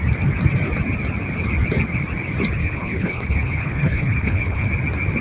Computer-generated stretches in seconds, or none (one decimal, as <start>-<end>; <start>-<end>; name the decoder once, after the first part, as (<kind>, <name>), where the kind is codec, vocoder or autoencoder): 2.6-4.7 (codec, HILCodec)